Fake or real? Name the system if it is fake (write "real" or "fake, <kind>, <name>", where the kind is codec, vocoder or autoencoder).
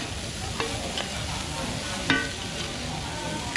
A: real